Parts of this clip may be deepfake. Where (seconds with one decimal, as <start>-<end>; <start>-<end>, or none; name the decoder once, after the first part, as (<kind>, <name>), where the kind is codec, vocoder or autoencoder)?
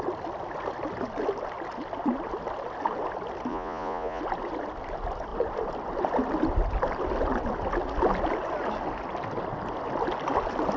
3.5-4.2 (vocoder, Vocos)